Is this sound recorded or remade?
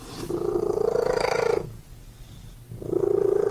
recorded